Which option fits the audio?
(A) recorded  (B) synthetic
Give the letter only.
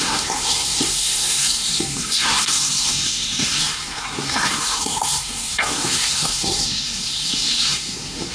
B